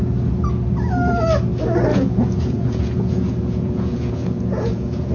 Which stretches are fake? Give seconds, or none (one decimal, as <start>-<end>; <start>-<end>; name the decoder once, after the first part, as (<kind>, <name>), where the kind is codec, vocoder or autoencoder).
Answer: 1.9-5.1 (vocoder, Vocos)